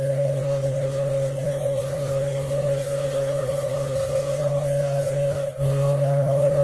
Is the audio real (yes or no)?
no